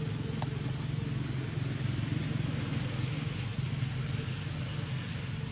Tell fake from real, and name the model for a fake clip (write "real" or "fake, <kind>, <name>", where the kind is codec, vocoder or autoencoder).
real